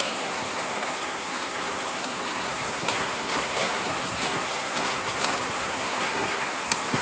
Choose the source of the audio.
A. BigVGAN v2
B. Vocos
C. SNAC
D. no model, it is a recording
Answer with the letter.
C